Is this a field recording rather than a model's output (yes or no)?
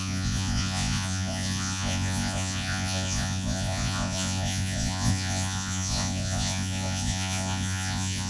no